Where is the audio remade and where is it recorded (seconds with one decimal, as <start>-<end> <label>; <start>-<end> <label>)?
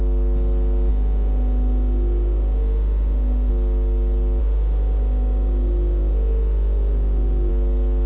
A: 0.0-0.9 recorded; 0.9-3.5 remade; 3.5-4.4 recorded; 4.4-7.5 remade; 7.5-8.1 recorded